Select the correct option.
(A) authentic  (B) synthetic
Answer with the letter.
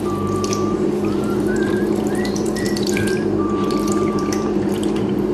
B